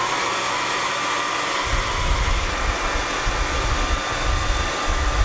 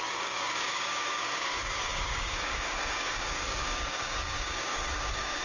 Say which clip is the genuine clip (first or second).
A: first